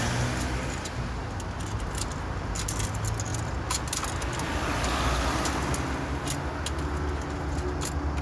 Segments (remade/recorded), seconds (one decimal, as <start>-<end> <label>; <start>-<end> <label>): 0.0-8.2 recorded